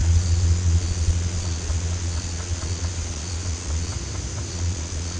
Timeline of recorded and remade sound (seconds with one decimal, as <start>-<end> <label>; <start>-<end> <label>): 0.0-3.9 remade; 3.9-4.5 recorded; 4.5-5.2 remade